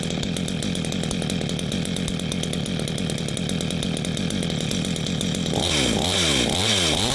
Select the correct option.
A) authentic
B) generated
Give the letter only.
A